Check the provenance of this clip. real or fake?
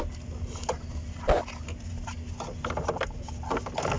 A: real